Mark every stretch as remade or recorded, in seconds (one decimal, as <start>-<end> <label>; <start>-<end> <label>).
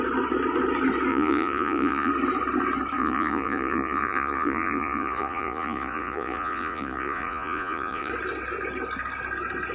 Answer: 0.0-1.1 recorded; 1.1-2.1 remade; 2.1-3.0 recorded; 3.0-8.1 remade; 8.1-9.7 recorded